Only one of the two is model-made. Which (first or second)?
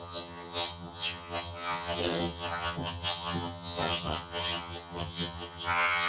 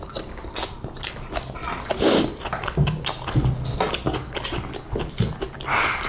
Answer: first